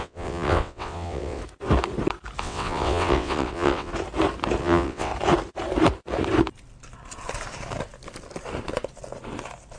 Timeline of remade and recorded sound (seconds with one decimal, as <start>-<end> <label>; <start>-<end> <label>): 0.0-1.4 remade; 1.4-2.4 recorded; 2.4-3.9 remade; 3.9-4.6 recorded; 4.6-5.1 remade; 5.1-9.8 recorded